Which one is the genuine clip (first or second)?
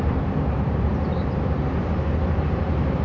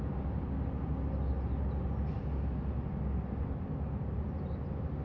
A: second